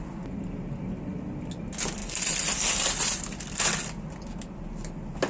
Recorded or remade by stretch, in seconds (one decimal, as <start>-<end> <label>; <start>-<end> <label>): 0.0-5.3 recorded